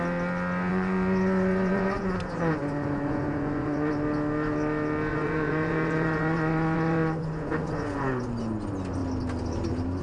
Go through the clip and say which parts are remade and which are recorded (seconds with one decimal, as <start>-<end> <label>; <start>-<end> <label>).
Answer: 0.0-0.7 recorded; 0.7-3.9 remade; 3.9-5.1 recorded; 5.1-8.3 remade; 8.3-10.0 recorded